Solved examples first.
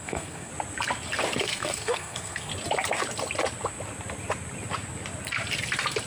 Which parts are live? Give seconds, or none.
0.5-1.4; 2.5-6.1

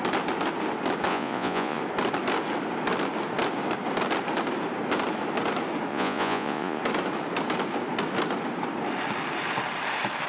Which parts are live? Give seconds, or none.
0.0-1.1; 1.8-5.9; 6.8-10.3

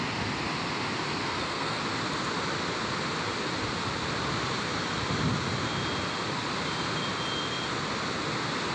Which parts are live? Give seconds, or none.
0.0-1.2; 1.8-8.7